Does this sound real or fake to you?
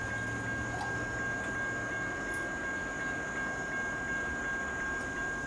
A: real